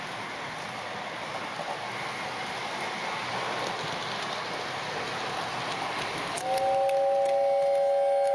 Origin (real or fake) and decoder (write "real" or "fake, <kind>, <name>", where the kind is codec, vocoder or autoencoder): real